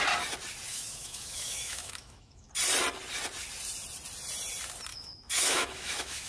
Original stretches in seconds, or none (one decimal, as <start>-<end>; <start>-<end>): 0.0-0.7; 2.5-4.9